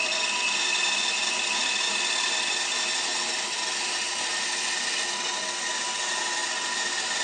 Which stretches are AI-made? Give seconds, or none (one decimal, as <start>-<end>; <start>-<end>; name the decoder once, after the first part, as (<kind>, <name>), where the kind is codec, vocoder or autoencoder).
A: none